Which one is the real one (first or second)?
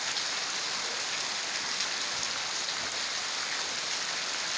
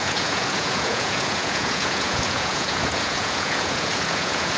first